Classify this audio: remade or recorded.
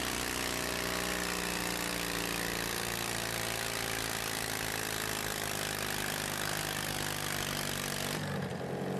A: recorded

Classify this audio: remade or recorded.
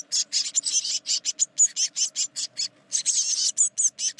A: recorded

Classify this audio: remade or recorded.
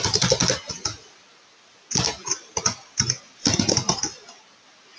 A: recorded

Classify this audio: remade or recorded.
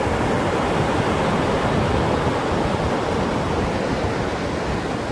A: recorded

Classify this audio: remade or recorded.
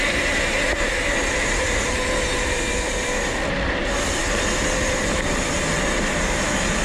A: recorded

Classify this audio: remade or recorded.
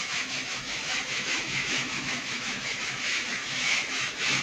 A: remade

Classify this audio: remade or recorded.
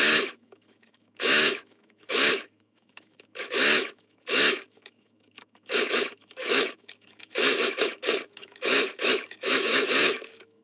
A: remade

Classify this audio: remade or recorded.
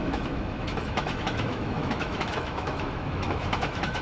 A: remade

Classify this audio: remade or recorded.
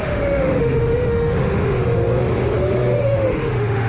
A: remade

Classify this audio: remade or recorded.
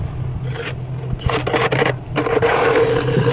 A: recorded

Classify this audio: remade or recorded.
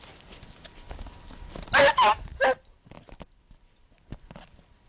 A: recorded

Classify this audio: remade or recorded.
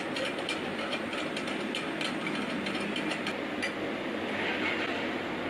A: recorded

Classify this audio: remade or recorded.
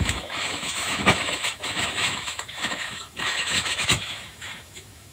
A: remade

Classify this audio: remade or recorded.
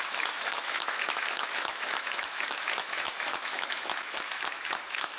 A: remade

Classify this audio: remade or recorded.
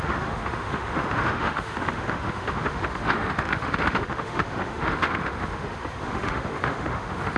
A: remade